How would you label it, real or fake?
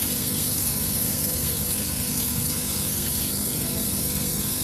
fake